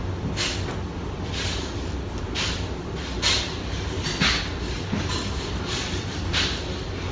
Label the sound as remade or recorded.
recorded